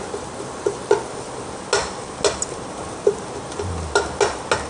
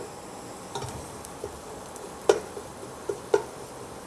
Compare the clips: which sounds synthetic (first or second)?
second